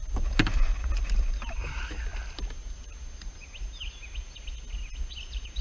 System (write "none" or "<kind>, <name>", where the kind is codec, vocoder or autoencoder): none